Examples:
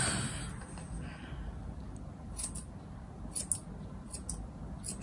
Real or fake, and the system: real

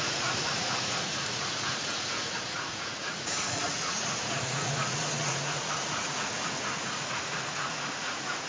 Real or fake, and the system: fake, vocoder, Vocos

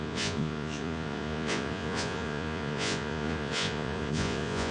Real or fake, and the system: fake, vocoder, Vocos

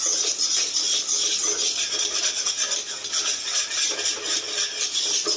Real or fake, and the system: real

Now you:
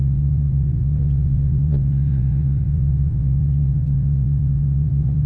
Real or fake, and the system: fake, vocoder, WaveNeXt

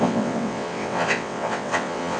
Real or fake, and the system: fake, vocoder, WaveNeXt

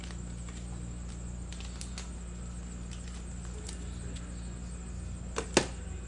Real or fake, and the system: real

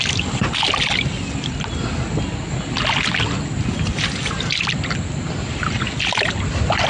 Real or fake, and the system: real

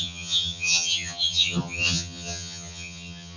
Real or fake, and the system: fake, vocoder, HiFi-GAN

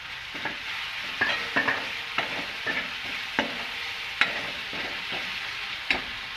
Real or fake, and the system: real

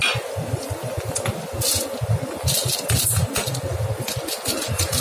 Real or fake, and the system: real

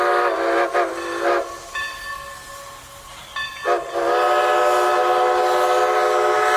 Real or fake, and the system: real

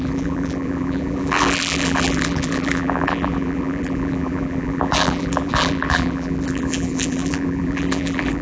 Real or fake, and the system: fake, vocoder, BigVGAN v2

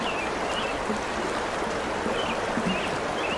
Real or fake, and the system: real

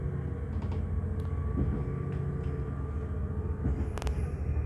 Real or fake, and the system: real